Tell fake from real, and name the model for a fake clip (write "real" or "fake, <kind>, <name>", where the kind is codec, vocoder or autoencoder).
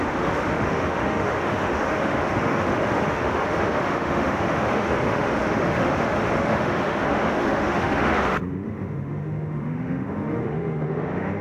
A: fake, autoencoder, DAC-VAE